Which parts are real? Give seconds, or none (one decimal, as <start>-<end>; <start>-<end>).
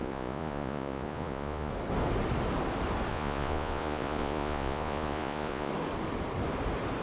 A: 1.7-3.1; 5.7-7.0